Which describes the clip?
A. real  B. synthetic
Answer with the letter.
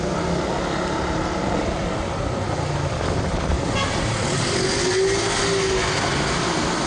A